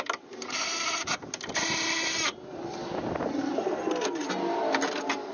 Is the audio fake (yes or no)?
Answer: no